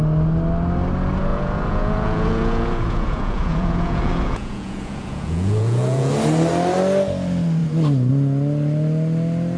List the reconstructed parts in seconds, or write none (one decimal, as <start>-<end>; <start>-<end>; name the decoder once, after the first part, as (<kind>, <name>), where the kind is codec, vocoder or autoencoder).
1.3-6.1 (vocoder, Vocos)